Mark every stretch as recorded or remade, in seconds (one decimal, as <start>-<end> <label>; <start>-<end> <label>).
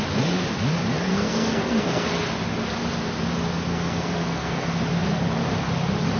0.0-1.1 recorded; 1.1-2.1 remade; 2.1-3.7 recorded; 3.7-4.7 remade; 4.7-6.2 recorded